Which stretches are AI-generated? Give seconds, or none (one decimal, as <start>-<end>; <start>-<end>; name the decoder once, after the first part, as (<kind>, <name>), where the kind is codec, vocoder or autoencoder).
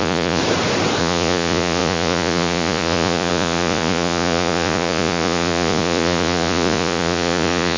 0.0-0.4 (vocoder, Vocos); 1.0-7.8